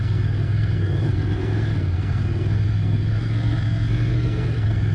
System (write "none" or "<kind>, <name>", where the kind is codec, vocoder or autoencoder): codec, SNAC